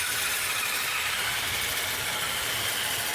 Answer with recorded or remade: recorded